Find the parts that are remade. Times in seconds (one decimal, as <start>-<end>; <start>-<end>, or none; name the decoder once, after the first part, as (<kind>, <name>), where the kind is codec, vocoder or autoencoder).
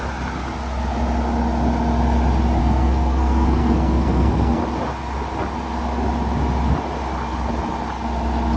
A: 2.6-4.6 (codec, SNAC)